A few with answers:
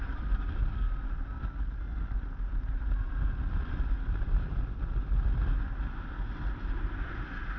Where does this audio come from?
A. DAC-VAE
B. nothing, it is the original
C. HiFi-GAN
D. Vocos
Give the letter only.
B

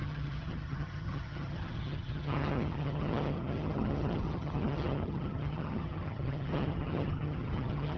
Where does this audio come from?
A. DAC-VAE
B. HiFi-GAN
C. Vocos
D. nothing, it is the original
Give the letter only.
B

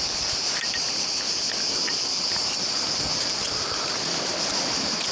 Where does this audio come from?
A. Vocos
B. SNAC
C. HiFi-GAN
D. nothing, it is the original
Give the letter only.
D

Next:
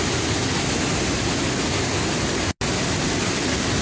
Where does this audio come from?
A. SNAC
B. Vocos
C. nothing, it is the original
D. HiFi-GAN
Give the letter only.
C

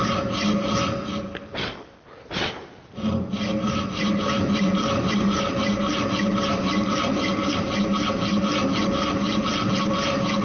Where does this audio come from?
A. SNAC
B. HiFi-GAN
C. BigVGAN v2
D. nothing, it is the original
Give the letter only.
D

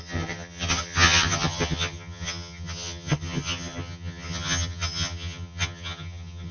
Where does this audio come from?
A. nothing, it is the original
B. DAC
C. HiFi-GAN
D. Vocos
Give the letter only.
C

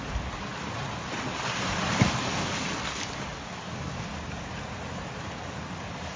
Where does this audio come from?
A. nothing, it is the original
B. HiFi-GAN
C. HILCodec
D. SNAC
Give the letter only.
A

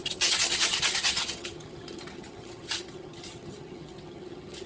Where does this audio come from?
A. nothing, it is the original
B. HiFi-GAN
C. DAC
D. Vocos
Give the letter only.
B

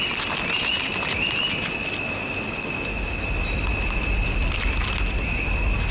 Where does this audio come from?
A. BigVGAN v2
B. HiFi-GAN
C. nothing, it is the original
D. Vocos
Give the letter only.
C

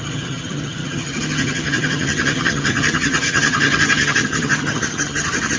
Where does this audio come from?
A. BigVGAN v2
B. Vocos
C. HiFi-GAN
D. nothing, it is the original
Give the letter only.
C